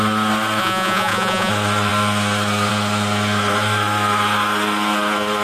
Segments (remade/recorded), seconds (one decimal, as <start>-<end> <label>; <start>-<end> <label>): 0.0-0.6 recorded; 0.6-1.5 remade; 1.5-5.4 recorded